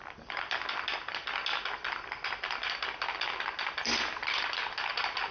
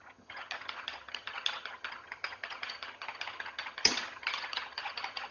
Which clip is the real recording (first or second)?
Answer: first